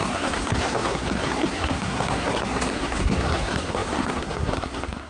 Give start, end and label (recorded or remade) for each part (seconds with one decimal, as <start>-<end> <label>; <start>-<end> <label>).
0.0-5.1 remade